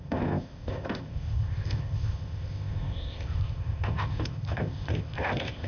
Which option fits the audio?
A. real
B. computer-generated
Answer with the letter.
B